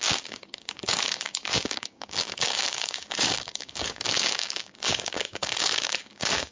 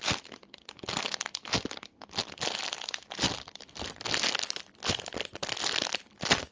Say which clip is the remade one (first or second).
first